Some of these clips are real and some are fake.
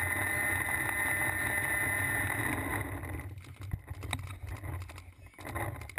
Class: real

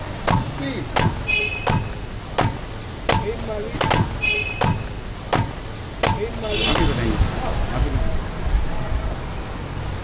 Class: real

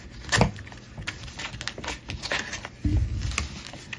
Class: real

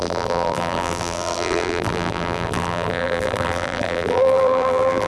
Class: fake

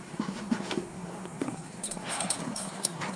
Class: fake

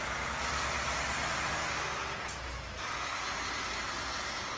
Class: real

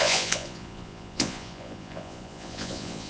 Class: fake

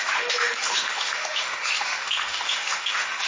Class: fake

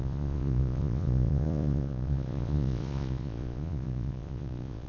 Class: fake